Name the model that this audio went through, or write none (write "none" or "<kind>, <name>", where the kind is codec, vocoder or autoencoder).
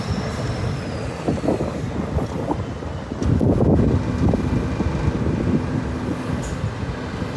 none